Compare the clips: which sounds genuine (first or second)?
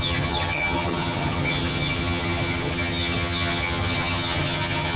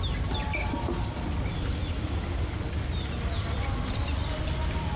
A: second